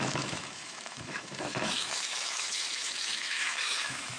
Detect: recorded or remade remade